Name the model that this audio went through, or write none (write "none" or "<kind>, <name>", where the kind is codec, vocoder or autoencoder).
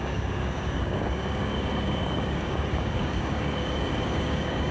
codec, DAC